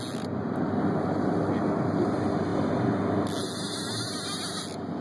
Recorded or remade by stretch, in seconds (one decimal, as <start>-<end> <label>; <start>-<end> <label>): 0.0-5.0 recorded

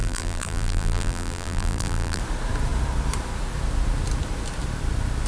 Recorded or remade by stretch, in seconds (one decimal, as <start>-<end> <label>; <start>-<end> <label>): 0.0-2.2 remade; 2.2-5.3 recorded

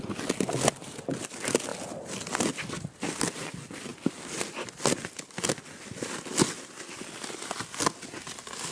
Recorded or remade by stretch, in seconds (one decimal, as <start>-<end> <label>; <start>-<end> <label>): 0.0-8.7 recorded

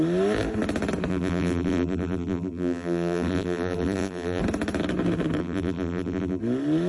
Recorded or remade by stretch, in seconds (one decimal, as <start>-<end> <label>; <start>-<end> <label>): 0.0-1.1 recorded; 1.1-4.4 remade; 4.4-5.4 recorded; 5.4-6.4 remade; 6.4-6.9 recorded

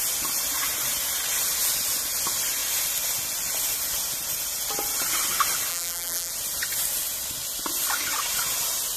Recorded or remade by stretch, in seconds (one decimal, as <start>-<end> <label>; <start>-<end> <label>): 0.0-5.7 recorded; 5.7-6.3 remade; 6.3-9.0 recorded